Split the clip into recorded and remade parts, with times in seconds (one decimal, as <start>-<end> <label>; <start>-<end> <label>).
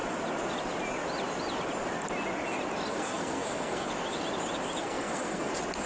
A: 0.0-2.9 recorded; 2.9-3.9 remade; 3.9-4.8 recorded; 4.8-5.5 remade; 5.5-5.9 recorded